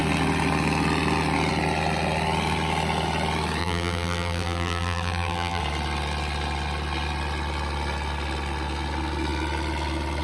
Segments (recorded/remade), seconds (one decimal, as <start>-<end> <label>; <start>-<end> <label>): 0.0-3.6 recorded; 3.6-5.6 remade; 5.6-10.2 recorded